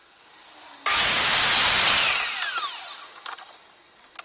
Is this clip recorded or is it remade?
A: recorded